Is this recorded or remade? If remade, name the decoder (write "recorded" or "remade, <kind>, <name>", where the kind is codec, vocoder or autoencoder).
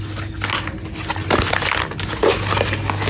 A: recorded